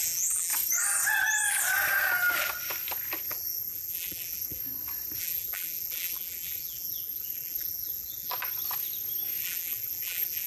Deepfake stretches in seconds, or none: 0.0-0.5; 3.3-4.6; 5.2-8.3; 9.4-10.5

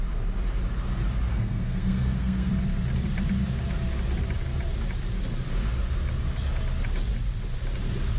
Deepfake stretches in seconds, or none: 1.3-2.5

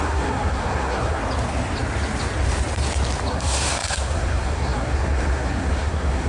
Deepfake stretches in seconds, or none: 0.0-1.2; 3.3-6.3

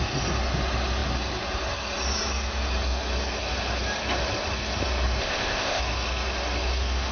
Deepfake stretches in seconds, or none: 5.2-5.8